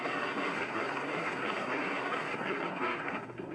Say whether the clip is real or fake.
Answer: fake